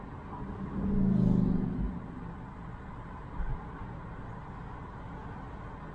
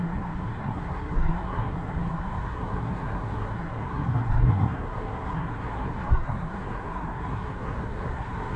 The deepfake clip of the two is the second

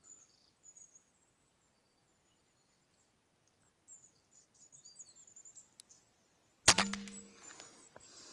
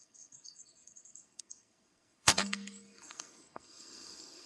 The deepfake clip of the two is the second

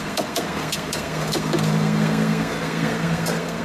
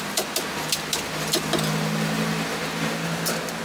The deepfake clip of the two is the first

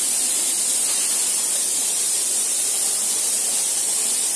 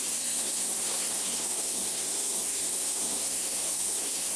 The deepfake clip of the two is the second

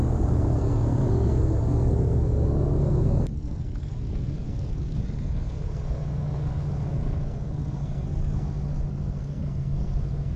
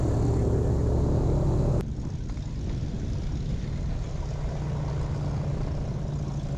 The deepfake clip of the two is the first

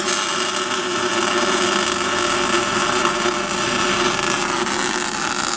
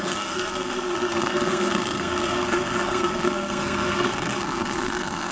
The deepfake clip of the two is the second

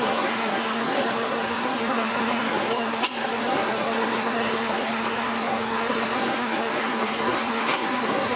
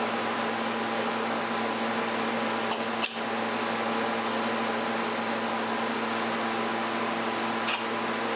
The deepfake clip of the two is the first